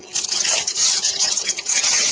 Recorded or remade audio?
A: remade